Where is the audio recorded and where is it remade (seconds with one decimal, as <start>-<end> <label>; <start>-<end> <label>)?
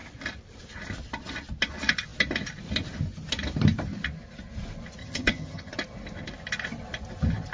0.0-5.0 recorded; 5.0-5.7 remade; 5.7-7.5 recorded